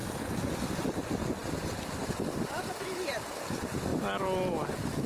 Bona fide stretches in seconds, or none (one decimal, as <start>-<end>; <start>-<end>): 0.8-1.4; 3.3-5.1